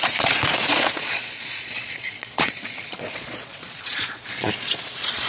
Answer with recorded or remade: remade